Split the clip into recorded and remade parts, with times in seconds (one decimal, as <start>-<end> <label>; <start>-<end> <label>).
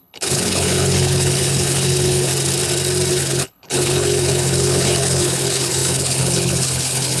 0.0-2.3 remade; 2.3-3.1 recorded; 3.1-7.2 remade